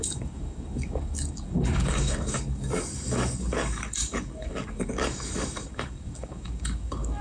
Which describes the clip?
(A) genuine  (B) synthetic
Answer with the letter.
B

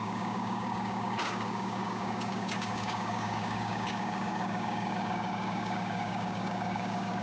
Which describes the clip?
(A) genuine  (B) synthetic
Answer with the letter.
B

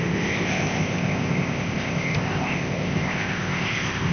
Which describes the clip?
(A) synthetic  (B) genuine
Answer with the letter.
A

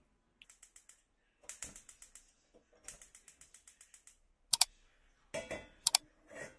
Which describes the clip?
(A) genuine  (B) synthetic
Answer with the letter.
A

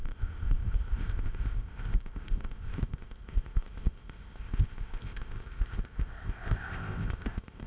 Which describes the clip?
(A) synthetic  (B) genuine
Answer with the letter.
A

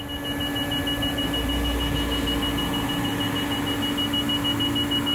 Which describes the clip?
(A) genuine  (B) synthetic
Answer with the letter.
A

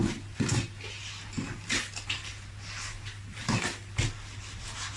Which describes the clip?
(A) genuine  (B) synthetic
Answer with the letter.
A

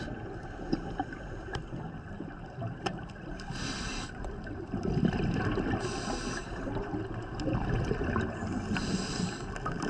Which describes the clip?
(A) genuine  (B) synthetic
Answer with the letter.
A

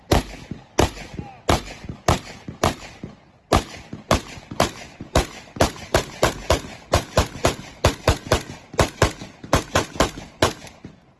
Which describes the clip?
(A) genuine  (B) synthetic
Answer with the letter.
A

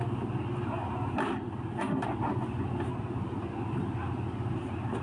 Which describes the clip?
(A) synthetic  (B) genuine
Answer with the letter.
B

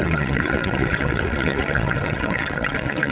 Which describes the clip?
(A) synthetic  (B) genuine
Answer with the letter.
A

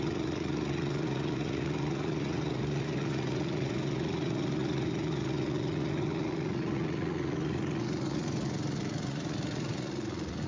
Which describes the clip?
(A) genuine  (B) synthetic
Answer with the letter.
B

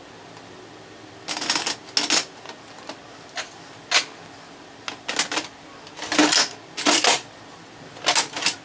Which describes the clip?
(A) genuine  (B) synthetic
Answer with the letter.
A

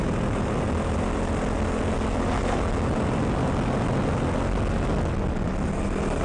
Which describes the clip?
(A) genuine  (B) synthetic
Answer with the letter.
A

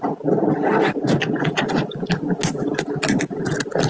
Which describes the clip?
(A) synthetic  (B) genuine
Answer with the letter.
B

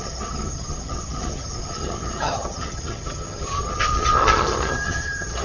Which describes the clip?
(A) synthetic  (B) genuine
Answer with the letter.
A